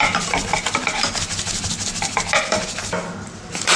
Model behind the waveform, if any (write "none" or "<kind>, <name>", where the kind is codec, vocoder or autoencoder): none